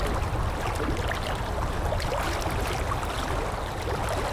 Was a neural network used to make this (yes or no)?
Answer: no